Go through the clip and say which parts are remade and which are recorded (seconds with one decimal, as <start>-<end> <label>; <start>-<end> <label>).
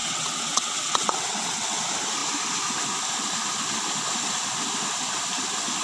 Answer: 0.0-1.8 remade; 1.8-5.8 recorded